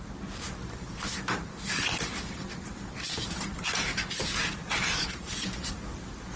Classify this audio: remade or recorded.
recorded